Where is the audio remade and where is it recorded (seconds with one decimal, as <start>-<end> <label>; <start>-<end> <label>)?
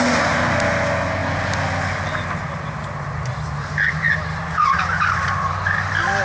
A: 0.0-6.2 recorded